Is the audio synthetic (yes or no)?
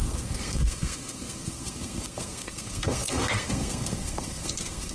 yes